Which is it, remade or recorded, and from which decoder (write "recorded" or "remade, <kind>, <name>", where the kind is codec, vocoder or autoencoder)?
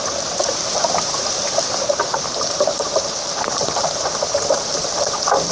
recorded